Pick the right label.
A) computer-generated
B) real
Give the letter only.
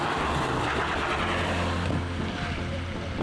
B